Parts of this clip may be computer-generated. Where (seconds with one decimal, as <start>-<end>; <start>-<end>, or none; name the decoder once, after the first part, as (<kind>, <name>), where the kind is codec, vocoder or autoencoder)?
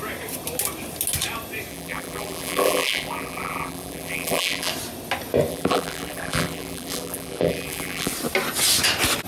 1.7-4.7 (vocoder, BigVGAN v2); 5.5-8.1